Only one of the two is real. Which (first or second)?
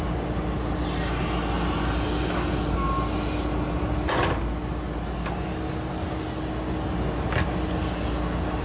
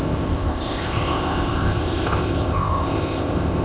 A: first